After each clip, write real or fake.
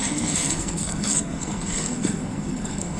fake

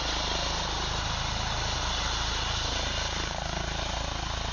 real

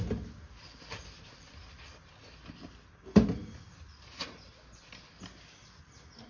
real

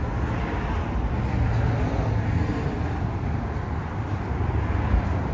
real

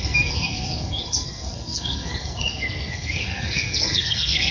fake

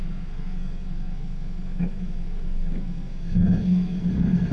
fake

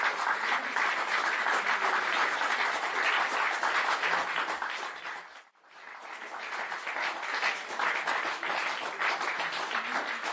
real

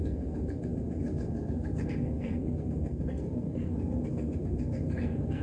fake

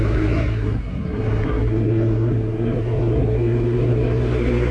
fake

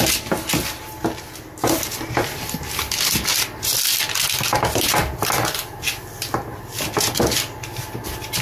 real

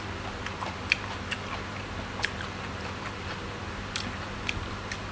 real